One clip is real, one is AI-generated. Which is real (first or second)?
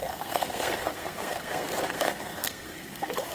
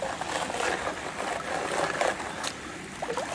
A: second